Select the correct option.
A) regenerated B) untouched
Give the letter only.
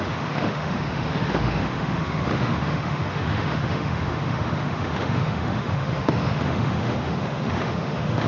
A